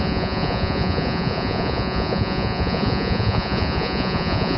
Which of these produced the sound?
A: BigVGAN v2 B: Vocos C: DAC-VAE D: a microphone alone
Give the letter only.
B